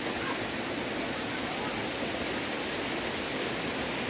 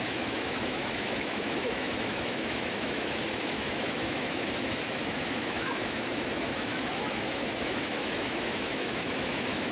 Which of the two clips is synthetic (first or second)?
second